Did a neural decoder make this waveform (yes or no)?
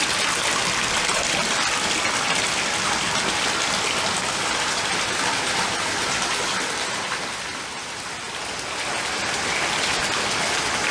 no